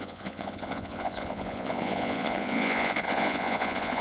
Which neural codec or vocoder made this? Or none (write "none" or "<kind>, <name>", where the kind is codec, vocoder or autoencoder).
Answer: vocoder, Vocos